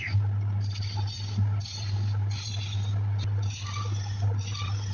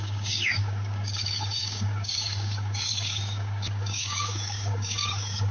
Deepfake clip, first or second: second